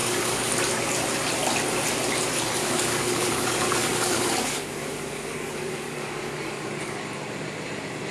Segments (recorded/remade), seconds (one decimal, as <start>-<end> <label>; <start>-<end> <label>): 0.0-0.5 remade; 0.5-2.6 recorded; 2.6-7.0 remade; 7.0-8.1 recorded